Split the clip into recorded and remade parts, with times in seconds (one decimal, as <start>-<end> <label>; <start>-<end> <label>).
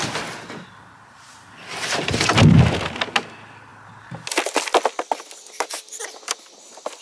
0.0-7.0 recorded